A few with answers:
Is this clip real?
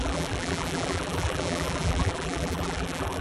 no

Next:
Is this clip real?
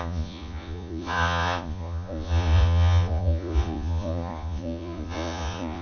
no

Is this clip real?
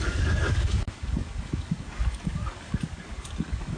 no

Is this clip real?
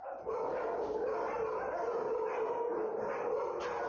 yes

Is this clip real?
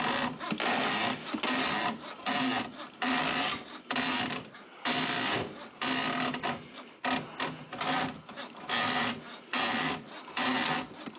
yes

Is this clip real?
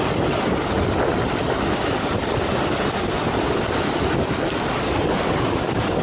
yes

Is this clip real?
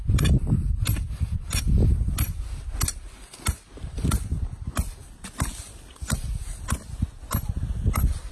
yes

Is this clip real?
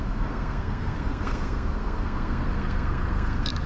no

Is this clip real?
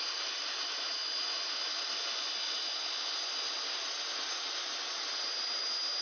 yes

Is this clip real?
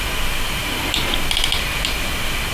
yes